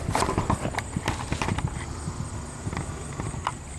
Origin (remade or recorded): recorded